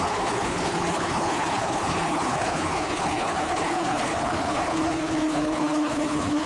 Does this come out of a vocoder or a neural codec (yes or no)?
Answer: yes